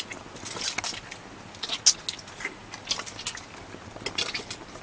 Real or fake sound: real